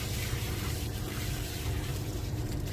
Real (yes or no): no